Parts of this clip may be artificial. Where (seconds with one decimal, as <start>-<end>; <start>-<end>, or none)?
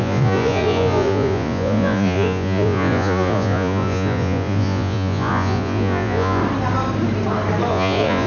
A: 0.0-6.4; 7.7-8.3